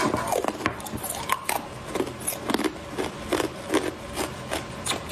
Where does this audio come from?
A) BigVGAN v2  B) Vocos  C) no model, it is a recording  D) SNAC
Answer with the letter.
C